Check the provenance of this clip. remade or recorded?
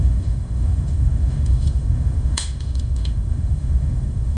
remade